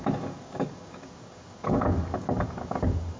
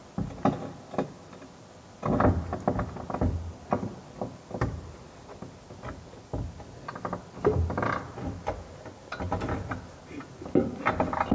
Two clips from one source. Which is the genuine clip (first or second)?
second